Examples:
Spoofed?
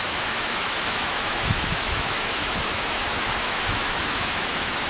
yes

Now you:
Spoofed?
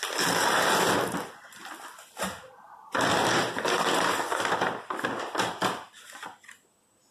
no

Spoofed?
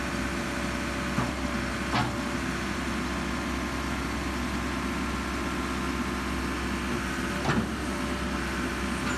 no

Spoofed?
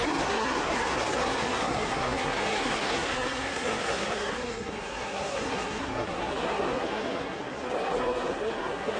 yes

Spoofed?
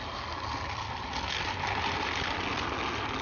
no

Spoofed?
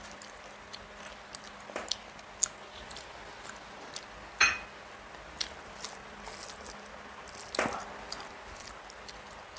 no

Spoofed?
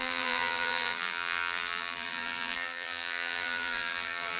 yes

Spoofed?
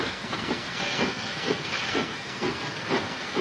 yes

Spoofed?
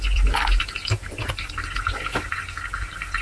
no